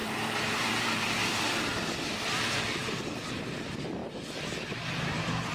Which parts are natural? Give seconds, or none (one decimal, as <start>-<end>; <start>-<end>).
3.3-5.5